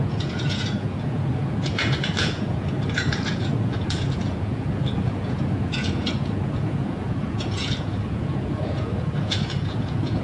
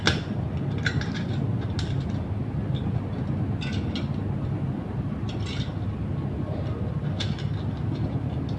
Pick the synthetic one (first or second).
first